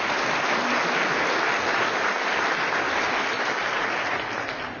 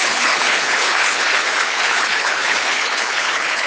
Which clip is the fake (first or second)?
second